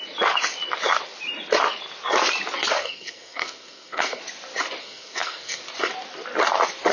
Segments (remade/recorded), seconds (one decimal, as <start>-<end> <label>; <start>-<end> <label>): 0.0-2.8 recorded; 2.8-4.2 remade; 4.2-4.8 recorded; 4.8-5.6 remade; 5.6-6.9 recorded

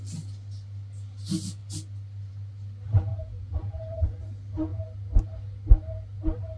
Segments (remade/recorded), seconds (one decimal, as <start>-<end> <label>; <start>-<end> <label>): 0.0-3.1 recorded; 3.1-4.2 remade; 4.2-6.6 recorded

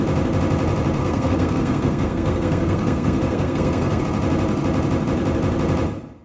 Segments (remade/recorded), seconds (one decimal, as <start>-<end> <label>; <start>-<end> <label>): 0.0-1.0 recorded; 1.0-4.0 remade; 4.0-6.2 recorded

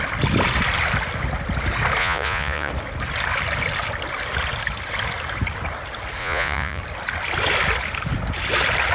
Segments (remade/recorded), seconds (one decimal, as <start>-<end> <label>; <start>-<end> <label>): 0.0-2.0 recorded; 2.0-2.7 remade; 2.7-6.2 recorded; 6.2-6.8 remade; 6.8-8.9 recorded

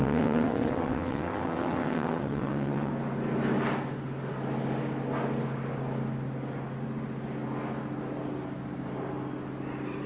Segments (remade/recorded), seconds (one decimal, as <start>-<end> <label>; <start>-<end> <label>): 0.0-2.9 remade; 2.9-10.1 recorded

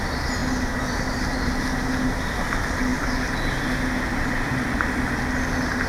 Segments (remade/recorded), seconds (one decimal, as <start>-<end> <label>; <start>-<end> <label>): 0.0-5.9 recorded